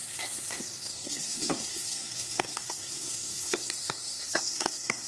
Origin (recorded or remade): remade